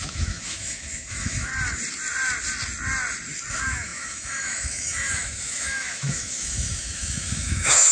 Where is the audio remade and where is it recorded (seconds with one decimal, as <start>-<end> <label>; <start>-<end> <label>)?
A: 0.0-1.5 remade; 1.5-3.5 recorded; 3.5-7.9 remade